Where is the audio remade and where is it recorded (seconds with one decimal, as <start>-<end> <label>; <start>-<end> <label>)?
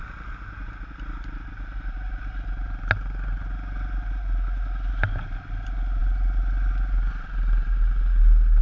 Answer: 0.0-8.6 recorded